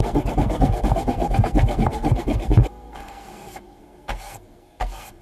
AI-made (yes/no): yes